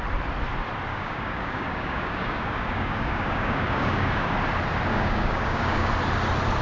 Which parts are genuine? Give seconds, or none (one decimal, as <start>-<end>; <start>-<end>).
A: 0.0-0.9; 4.3-4.9; 5.9-6.6

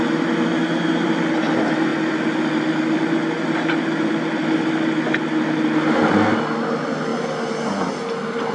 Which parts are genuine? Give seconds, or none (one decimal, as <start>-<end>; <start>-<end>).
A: 0.0-8.5

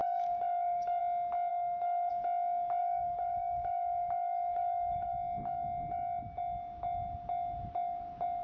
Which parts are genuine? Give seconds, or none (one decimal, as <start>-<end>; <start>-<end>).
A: 1.0-1.5; 2.1-2.8; 5.1-8.4

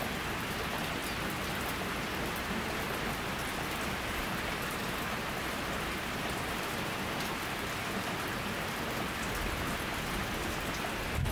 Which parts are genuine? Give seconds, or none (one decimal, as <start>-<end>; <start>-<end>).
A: 0.0-11.3

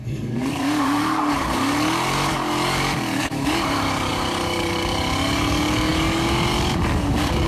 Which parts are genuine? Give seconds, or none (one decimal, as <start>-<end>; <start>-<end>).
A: none